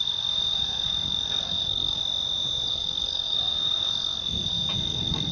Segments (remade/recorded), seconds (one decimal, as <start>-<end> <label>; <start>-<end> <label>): 0.0-2.0 remade; 2.0-2.7 recorded; 2.7-5.3 remade